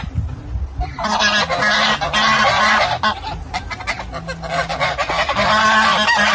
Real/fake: real